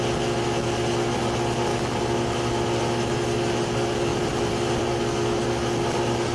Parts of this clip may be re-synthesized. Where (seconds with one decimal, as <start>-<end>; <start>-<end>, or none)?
4.1-4.9